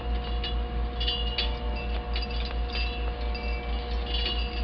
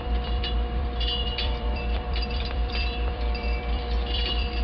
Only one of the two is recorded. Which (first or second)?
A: first